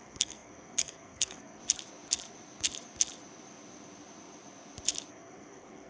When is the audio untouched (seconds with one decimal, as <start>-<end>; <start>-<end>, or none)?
1.6-5.1